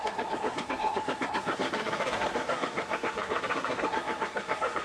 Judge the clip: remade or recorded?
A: remade